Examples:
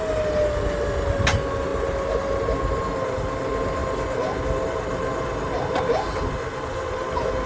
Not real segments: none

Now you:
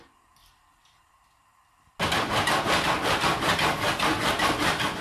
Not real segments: none

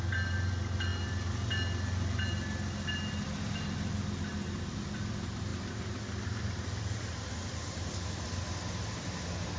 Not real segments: none

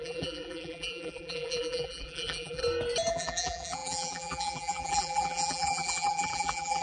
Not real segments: 0.0-2.6; 3.1-6.8

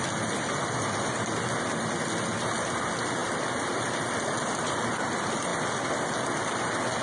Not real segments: 3.2-4.7

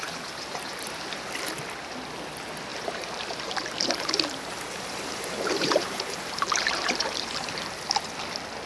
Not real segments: 2.7-7.5

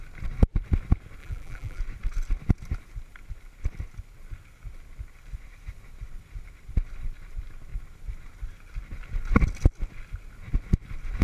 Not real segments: 1.2-1.8